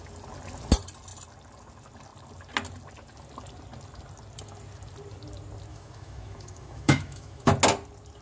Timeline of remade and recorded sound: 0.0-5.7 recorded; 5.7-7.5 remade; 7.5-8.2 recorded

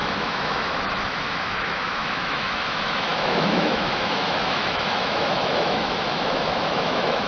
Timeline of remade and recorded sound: 0.0-7.3 remade